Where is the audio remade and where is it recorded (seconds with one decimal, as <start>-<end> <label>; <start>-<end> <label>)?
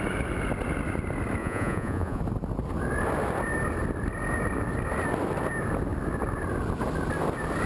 0.0-1.4 recorded; 1.4-2.2 remade; 2.2-7.7 recorded